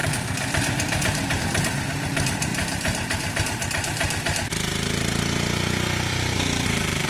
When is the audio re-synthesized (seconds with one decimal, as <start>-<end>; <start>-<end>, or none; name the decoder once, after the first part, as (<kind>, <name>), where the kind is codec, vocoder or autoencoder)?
0.0-1.4 (vocoder, BigVGAN v2); 2.5-5.2; 6.1-7.1